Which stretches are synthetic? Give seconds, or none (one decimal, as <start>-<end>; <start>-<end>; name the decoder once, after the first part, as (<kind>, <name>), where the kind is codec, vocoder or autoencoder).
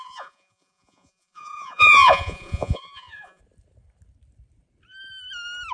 0.0-3.4 (vocoder, Vocos)